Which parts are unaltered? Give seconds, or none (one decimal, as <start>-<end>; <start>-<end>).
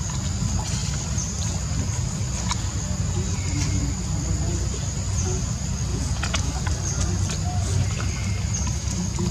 0.0-5.9; 6.5-9.3